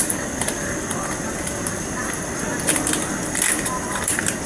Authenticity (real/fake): fake